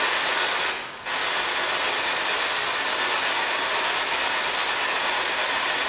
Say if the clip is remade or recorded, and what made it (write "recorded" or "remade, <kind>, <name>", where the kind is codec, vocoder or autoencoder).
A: recorded